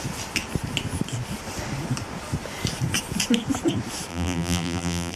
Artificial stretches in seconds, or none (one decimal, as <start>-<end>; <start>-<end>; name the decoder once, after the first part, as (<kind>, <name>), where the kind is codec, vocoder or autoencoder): 4.1-5.2 (vocoder, BigVGAN v2)